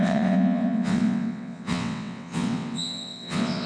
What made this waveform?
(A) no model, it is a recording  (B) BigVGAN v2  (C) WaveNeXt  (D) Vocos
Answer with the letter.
C